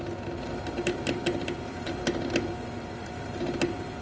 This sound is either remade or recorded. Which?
recorded